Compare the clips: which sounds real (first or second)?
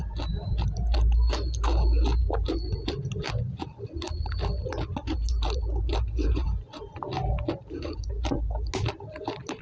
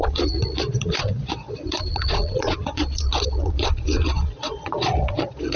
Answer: first